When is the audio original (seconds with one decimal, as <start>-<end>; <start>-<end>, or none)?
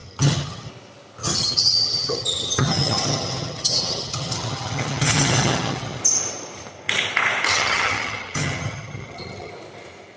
0.7-1.2; 6.0-7.5; 9.5-10.2